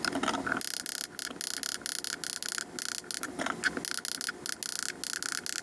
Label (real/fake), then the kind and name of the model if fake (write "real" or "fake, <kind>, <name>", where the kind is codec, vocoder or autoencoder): real